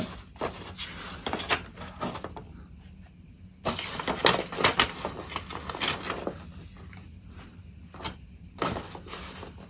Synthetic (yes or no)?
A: no